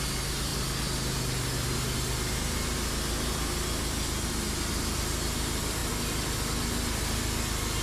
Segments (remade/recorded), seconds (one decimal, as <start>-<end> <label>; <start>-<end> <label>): 0.0-7.8 recorded

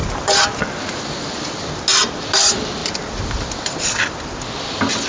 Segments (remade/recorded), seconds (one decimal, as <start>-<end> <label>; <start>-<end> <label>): 0.0-5.1 recorded

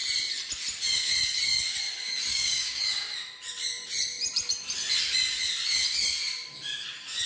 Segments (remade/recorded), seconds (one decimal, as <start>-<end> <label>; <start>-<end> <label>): 0.0-2.3 recorded; 2.3-2.8 remade; 2.8-7.3 recorded

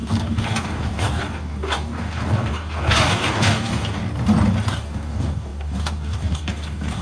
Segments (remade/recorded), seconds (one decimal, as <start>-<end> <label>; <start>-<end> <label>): 0.0-4.0 remade; 4.0-4.7 recorded; 4.7-7.0 remade

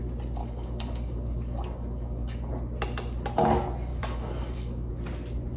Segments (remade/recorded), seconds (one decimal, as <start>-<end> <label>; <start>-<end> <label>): 0.0-0.4 recorded; 0.4-2.5 remade; 2.5-3.9 recorded; 3.9-4.9 remade; 4.9-5.6 recorded

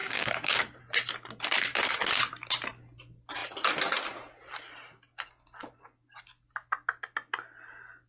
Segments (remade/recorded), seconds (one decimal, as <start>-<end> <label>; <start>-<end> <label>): 0.0-0.8 remade; 0.8-8.1 recorded

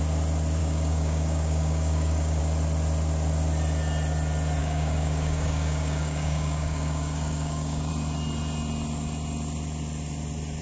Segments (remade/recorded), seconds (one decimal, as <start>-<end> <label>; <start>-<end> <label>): 0.0-0.6 recorded; 0.6-2.4 remade; 2.4-4.6 recorded; 4.6-7.9 remade; 7.9-10.6 recorded

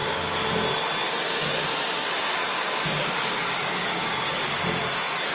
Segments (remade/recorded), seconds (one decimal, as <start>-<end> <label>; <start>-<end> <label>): 0.0-0.5 remade; 0.5-1.7 recorded; 1.7-4.6 remade; 4.6-5.3 recorded